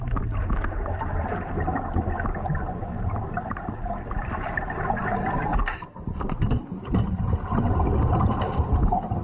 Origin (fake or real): real